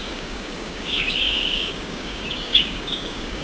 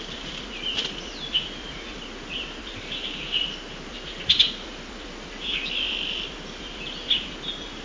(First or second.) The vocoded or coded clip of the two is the first